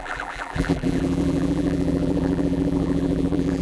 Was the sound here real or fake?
fake